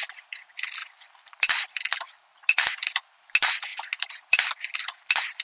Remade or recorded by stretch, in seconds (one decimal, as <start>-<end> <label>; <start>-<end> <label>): 0.0-5.4 recorded